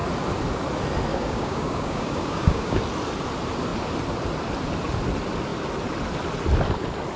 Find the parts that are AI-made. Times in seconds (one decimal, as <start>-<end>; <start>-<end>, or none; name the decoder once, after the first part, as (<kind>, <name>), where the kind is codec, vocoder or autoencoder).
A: 1.1-2.8 (codec, DAC)